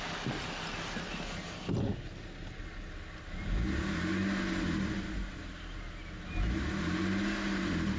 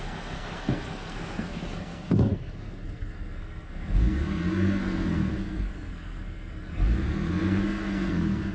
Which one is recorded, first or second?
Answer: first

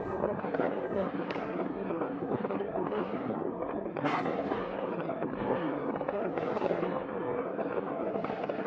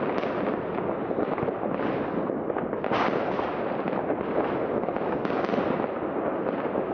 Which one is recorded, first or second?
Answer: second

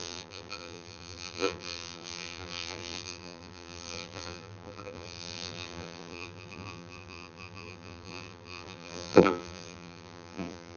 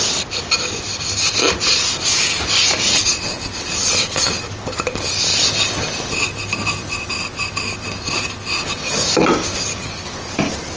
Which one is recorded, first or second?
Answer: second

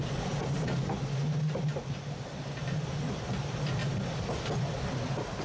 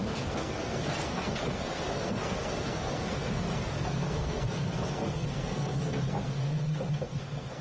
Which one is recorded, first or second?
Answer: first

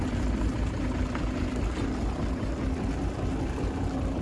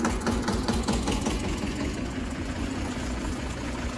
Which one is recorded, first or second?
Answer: first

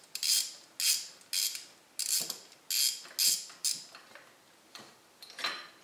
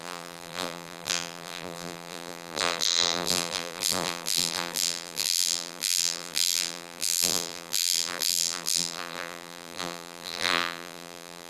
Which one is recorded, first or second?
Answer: first